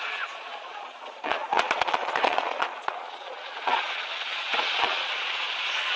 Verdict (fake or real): fake